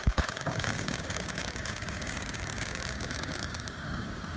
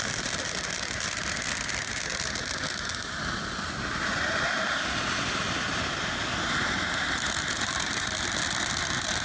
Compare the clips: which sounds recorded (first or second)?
second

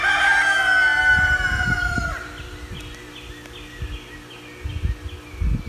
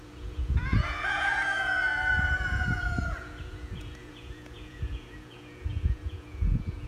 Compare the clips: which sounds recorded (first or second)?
first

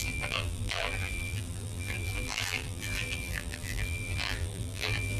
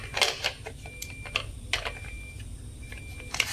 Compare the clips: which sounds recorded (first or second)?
second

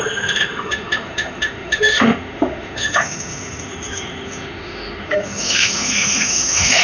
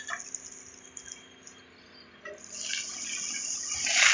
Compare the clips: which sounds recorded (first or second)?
second